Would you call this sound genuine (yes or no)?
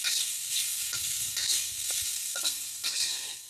no